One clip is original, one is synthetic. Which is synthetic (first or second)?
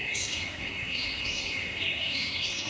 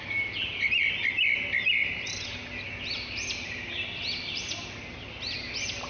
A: first